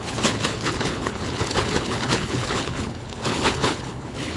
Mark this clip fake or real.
fake